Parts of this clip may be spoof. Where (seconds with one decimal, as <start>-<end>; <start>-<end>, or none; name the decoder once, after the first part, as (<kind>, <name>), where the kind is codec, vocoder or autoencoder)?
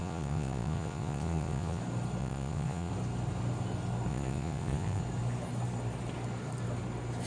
0.0-1.8 (vocoder, Vocos); 2.2-2.9; 4.1-5.0